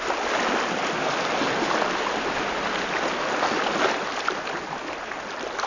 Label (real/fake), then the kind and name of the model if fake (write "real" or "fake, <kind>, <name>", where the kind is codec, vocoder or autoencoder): real